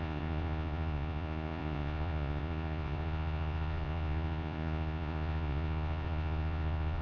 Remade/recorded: remade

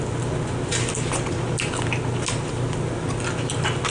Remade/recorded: recorded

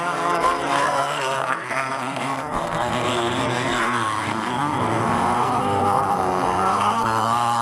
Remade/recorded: remade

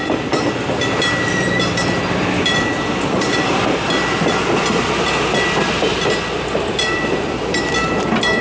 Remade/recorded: remade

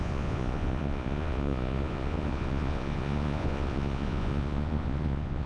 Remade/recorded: remade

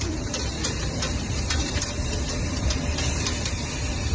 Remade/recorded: remade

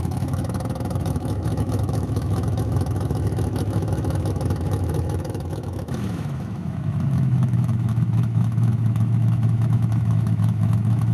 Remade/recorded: remade